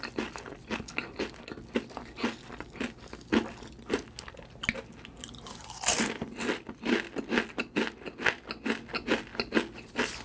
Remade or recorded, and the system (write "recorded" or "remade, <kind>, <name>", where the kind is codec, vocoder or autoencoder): recorded